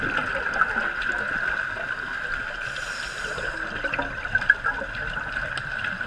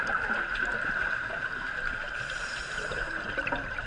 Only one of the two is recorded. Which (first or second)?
first